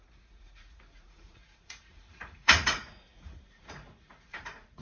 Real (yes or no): no